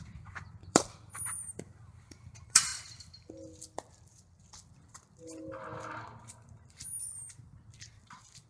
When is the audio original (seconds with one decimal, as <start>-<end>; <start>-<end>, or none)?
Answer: 5.7-6.2